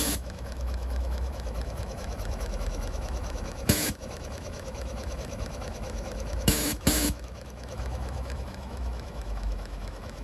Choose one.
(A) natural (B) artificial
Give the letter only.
B